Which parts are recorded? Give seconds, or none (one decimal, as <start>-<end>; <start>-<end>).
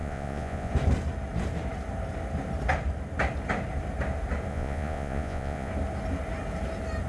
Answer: 0.7-4.5; 5.7-7.1